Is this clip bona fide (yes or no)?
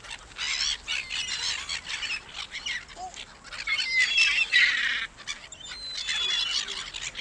yes